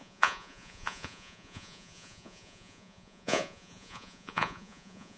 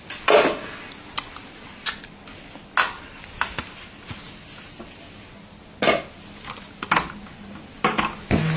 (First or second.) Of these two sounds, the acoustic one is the second